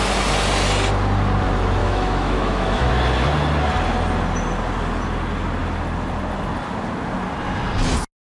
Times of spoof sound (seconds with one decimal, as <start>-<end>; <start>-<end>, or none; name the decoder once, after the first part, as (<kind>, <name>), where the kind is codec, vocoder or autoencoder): 1.8-2.9 (autoencoder, DAC-VAE)